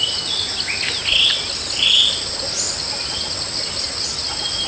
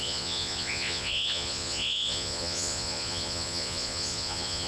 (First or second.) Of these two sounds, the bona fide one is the first